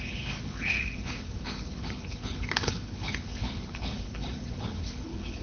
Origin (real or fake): fake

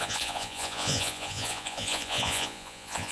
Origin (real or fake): fake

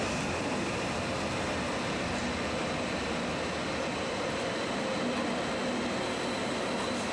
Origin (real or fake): real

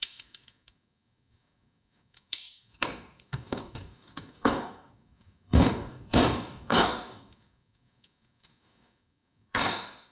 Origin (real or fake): fake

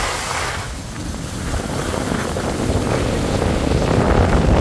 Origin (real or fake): real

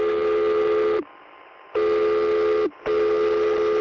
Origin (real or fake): real